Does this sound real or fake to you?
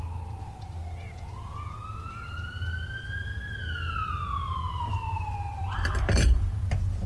real